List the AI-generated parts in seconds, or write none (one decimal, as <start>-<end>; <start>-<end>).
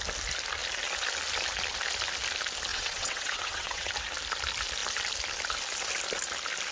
2.7-3.9